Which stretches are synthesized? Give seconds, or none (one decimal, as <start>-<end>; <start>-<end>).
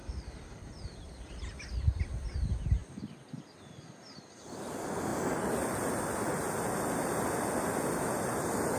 none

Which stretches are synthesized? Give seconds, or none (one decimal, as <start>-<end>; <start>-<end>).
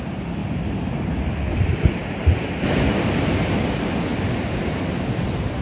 none